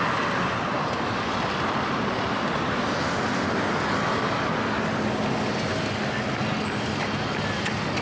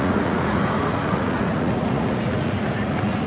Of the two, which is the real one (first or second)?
first